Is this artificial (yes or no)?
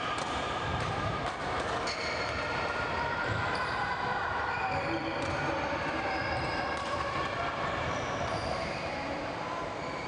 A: yes